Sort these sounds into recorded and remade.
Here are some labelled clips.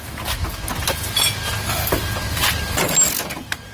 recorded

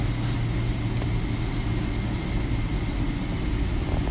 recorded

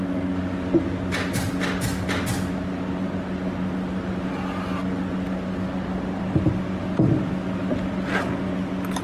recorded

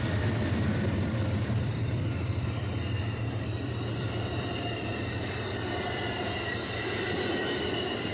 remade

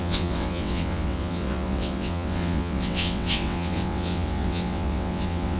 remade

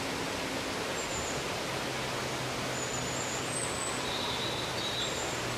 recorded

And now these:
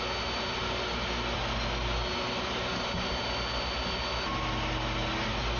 recorded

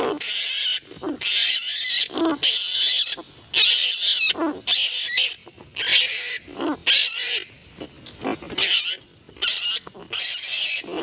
recorded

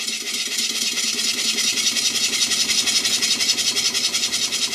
recorded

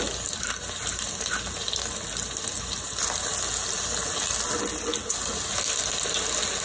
recorded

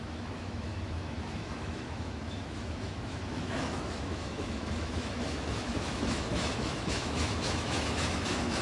remade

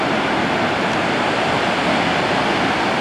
recorded